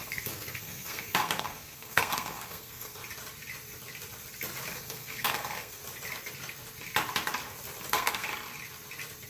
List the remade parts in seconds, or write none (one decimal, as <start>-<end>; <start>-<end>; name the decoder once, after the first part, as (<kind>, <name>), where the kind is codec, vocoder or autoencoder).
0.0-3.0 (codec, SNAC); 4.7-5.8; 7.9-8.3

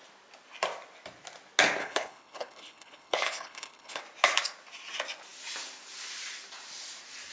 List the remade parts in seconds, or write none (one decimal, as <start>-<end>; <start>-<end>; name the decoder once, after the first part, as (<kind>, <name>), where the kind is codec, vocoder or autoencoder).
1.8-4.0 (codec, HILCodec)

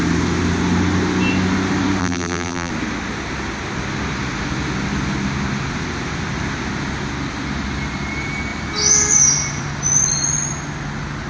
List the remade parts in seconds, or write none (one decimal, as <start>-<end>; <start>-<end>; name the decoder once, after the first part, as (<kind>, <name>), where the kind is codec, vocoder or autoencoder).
2.0-2.7 (vocoder, BigVGAN v2)

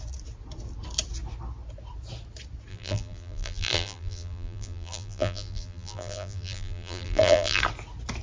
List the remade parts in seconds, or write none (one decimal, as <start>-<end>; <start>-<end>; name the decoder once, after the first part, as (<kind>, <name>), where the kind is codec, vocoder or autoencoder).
2.7-7.6 (vocoder, BigVGAN v2)

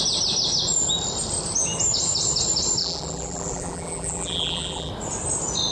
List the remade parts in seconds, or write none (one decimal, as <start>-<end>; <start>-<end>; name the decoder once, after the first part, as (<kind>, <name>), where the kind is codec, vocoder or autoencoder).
2.8-4.9 (vocoder, BigVGAN v2)

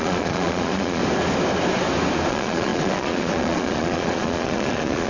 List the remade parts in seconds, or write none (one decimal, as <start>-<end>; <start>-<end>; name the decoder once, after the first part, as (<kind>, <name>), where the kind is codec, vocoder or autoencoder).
0.0-1.0 (vocoder, Vocos); 2.3-5.1